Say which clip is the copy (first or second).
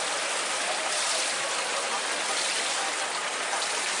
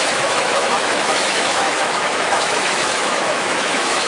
second